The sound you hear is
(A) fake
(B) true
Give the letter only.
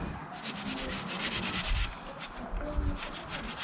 B